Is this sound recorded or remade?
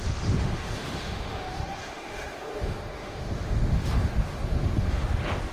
remade